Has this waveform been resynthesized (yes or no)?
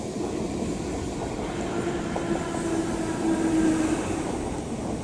no